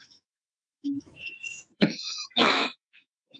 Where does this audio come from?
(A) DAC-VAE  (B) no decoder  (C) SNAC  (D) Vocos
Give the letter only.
A